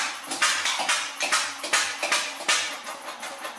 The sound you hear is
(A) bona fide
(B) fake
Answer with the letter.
A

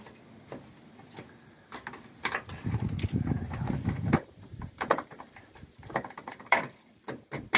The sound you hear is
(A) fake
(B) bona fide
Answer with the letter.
A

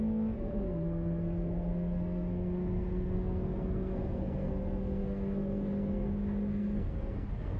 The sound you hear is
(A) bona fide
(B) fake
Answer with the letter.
B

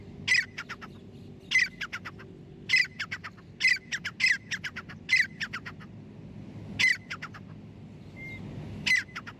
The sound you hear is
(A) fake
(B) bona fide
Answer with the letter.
B